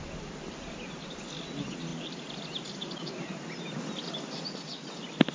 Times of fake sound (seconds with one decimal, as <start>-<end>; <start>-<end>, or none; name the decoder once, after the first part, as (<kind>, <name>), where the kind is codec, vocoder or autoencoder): none